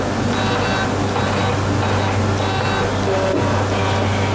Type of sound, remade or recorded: recorded